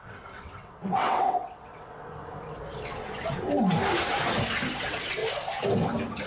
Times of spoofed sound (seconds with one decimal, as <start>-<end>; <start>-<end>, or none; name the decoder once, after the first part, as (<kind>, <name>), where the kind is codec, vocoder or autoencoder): 0.0-2.0 (vocoder, WaveNeXt); 4.8-5.2